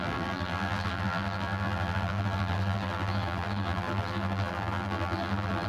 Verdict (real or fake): fake